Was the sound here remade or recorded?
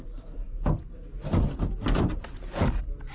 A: recorded